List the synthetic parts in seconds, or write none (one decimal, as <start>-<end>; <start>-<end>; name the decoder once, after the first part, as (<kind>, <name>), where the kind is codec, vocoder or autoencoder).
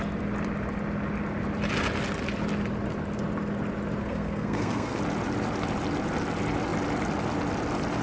4.0-5.0 (codec, SNAC)